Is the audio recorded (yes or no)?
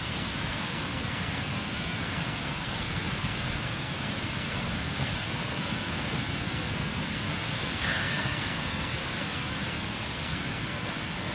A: no